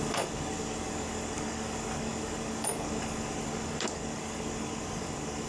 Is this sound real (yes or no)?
no